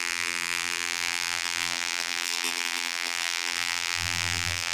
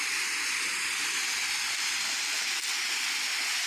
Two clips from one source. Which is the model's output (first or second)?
first